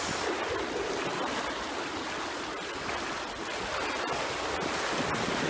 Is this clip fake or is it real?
real